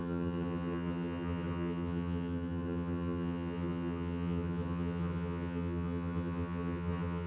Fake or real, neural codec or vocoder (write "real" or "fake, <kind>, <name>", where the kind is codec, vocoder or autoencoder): fake, vocoder, HiFi-GAN